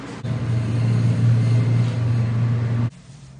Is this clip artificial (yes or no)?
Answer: no